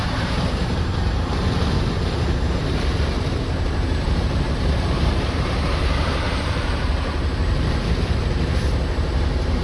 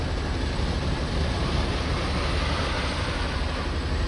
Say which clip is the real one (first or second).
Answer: second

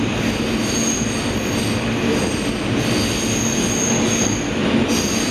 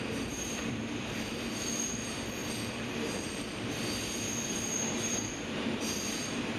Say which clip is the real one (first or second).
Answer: first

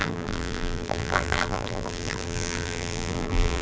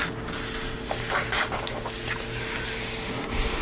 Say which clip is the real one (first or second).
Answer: second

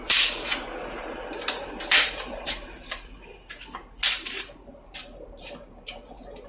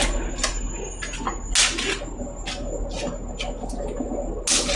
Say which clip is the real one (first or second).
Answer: second